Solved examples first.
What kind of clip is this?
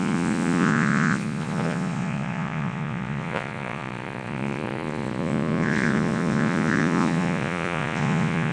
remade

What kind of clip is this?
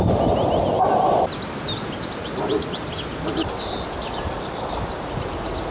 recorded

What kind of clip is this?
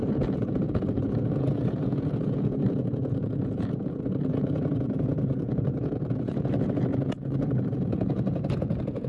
remade